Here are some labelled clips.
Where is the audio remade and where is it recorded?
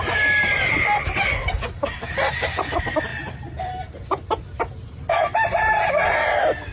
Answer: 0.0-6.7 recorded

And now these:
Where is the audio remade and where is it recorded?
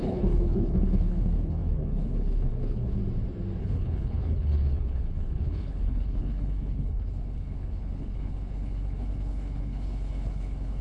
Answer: 0.0-3.0 remade; 3.0-3.6 recorded; 3.6-10.8 remade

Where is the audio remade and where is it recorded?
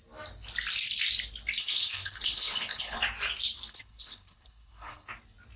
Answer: 0.0-1.6 recorded; 1.6-3.0 remade; 3.0-3.7 recorded; 3.7-5.1 remade; 5.1-5.6 recorded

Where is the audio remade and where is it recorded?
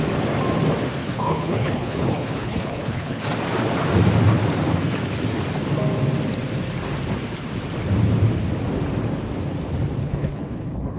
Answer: 0.0-1.0 recorded; 1.0-3.2 remade; 3.2-10.0 recorded; 10.0-11.0 remade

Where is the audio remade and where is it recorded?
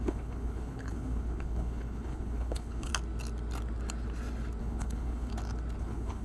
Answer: 0.0-2.9 remade; 2.9-4.6 recorded; 4.6-5.3 remade; 5.3-5.8 recorded; 5.8-6.2 remade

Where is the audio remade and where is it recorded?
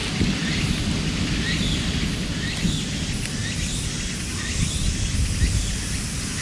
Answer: 0.0-6.4 recorded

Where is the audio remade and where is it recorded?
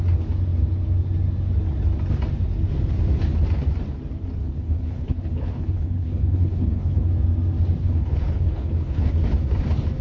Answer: 0.0-4.4 recorded; 4.4-7.1 remade; 7.1-7.8 recorded; 7.8-9.1 remade; 9.1-10.0 recorded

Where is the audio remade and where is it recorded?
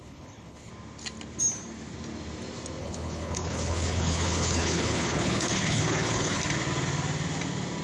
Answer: 0.0-0.7 remade; 0.7-2.8 recorded; 2.8-6.4 remade; 6.4-7.8 recorded